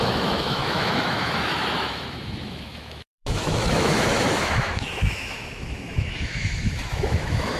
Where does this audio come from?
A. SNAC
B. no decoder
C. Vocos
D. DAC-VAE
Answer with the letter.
D